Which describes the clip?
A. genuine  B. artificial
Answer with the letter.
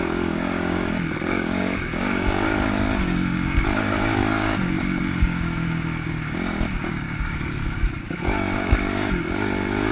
B